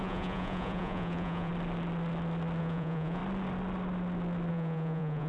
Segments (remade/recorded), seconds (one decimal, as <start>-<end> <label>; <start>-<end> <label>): 0.0-1.5 remade; 1.5-2.6 recorded; 2.6-3.2 remade; 3.2-4.5 recorded; 4.5-5.3 remade